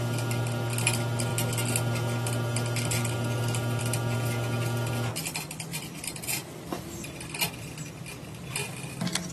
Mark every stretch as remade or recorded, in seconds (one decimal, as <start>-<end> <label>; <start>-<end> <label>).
0.0-5.7 recorded; 5.7-6.5 remade; 6.5-9.3 recorded